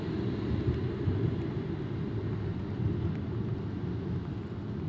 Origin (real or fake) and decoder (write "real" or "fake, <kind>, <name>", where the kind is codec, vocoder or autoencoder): real